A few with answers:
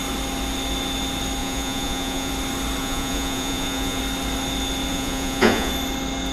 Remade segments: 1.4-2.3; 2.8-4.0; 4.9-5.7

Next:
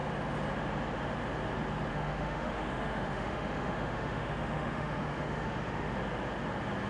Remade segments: 1.9-6.0